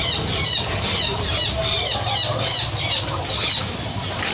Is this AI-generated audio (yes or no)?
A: no